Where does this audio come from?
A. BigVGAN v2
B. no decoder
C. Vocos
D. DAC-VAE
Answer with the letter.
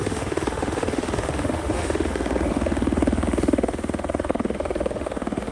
D